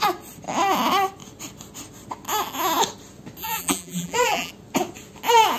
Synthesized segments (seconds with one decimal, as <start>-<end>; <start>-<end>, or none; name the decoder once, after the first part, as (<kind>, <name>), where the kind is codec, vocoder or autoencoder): 3.4-4.5 (vocoder, BigVGAN v2)